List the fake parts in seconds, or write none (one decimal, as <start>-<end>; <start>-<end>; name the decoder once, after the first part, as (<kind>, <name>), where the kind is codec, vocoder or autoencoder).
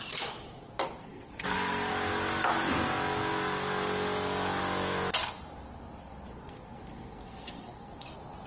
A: 1.0-1.9 (codec, SNAC); 6.0-8.1